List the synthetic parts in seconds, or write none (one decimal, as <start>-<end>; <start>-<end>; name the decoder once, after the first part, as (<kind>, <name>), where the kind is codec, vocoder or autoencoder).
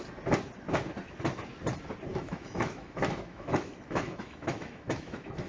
2.1-5.5 (autoencoder, DAC-VAE)